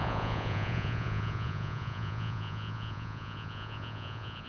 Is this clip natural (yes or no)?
no